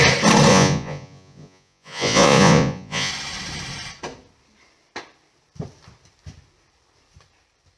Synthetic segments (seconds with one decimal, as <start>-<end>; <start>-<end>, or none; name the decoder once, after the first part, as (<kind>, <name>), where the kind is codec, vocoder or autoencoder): 0.5-3.1 (vocoder, Vocos)